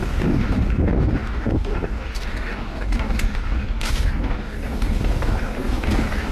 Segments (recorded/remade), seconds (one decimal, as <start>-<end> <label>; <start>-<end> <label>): 0.0-6.3 remade